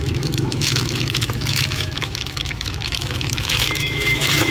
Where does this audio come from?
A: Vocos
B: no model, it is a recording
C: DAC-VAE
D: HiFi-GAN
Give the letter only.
C